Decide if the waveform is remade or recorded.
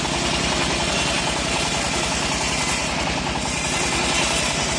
recorded